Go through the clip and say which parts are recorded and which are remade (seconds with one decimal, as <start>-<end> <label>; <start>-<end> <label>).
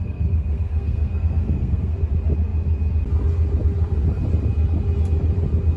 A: 0.0-2.0 remade; 2.0-5.8 recorded